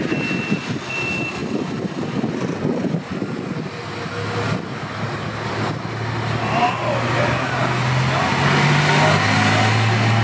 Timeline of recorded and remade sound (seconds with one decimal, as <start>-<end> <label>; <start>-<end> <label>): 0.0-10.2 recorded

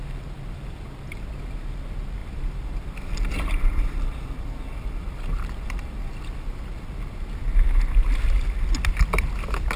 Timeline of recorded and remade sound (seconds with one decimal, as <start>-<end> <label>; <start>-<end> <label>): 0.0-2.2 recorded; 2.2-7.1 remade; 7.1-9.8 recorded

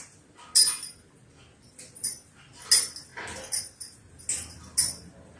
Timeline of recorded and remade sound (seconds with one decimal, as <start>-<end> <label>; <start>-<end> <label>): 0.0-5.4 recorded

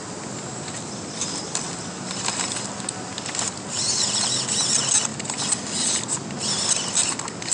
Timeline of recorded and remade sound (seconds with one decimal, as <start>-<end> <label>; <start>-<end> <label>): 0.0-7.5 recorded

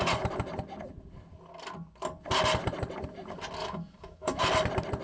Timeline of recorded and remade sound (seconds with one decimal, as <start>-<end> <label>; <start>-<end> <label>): 0.0-3.6 recorded; 3.6-4.4 remade; 4.4-5.0 recorded